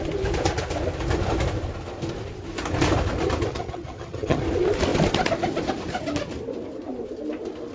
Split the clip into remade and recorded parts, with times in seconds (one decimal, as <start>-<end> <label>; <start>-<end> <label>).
0.0-3.5 recorded; 3.5-4.4 remade; 4.4-7.7 recorded